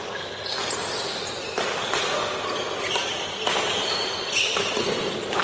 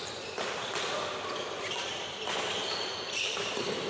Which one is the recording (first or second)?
first